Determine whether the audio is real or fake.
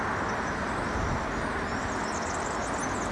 real